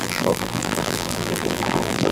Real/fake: fake